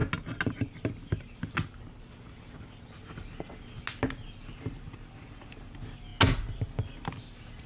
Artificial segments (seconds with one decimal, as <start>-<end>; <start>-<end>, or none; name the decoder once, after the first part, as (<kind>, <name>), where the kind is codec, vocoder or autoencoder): none